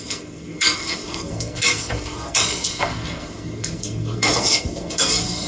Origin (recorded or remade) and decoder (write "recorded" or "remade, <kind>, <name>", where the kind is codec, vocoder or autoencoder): remade, codec, SNAC